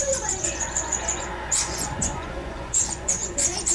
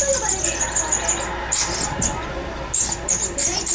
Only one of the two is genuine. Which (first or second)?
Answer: second